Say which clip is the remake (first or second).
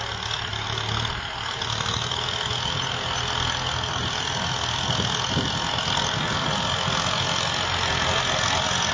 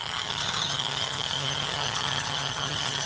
second